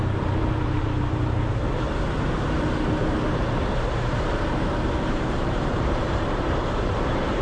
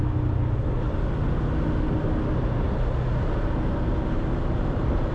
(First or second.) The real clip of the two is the second